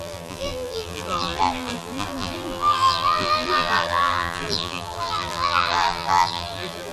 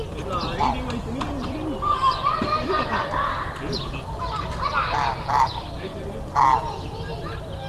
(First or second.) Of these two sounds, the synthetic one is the first